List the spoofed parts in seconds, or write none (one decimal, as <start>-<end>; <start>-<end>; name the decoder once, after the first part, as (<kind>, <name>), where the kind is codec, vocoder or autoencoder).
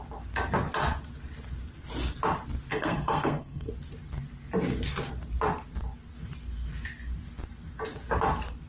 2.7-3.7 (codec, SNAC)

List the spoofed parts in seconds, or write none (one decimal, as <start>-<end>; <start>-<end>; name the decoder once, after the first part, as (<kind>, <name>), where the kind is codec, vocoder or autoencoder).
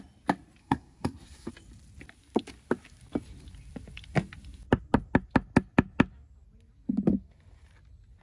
0.6-1.5 (codec, SNAC)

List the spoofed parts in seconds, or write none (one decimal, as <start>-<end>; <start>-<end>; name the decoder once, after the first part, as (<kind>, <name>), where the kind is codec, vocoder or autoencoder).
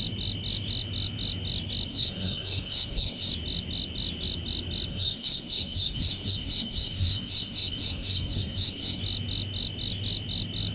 1.9-3.3 (codec, SNAC); 4.9-9.0